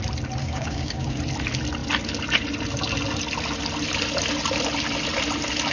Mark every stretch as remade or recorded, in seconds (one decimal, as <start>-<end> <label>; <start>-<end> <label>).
0.0-0.4 recorded; 0.4-1.2 remade; 1.2-5.7 recorded

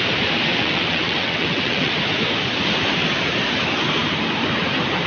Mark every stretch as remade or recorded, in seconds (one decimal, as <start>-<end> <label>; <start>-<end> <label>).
0.0-0.5 recorded; 0.5-1.9 remade; 1.9-5.1 recorded

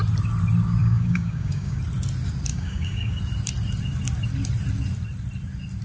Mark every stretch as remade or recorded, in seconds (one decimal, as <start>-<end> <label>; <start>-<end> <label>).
0.0-0.8 recorded; 0.8-1.8 remade; 1.8-2.5 recorded; 2.5-3.2 remade; 3.2-5.8 recorded

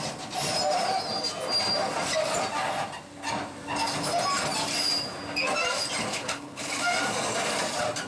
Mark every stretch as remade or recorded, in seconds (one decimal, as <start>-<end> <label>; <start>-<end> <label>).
0.0-6.1 recorded; 6.1-6.7 remade; 6.7-8.1 recorded

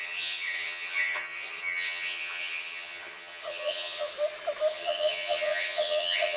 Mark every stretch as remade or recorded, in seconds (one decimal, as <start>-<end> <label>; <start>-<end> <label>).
0.0-4.1 remade; 4.1-4.7 recorded; 4.7-6.4 remade

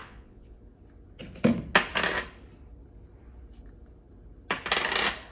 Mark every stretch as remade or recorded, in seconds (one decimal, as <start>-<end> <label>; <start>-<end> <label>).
0.0-0.6 remade; 0.6-5.3 recorded